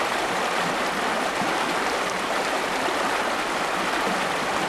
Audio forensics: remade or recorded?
recorded